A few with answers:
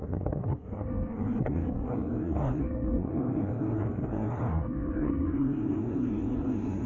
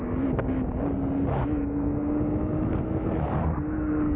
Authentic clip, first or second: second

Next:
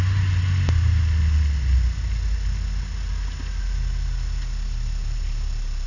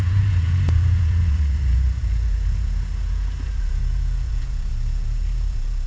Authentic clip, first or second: first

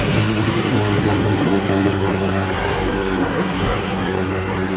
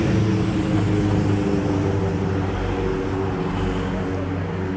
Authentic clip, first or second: second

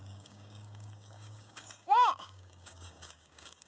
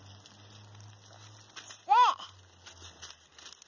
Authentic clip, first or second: second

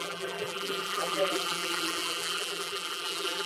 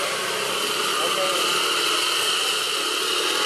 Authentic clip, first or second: second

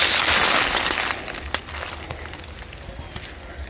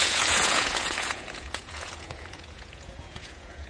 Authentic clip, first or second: first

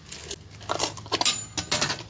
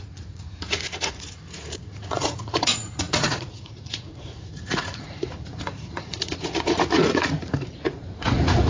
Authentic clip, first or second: first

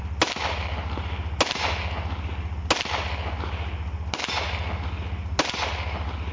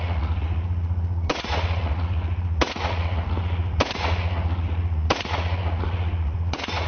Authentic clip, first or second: first